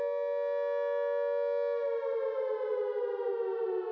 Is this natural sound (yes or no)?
yes